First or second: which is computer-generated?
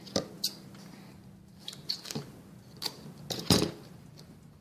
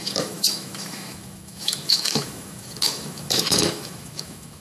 second